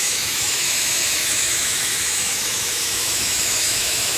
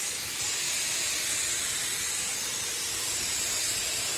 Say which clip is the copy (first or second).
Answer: first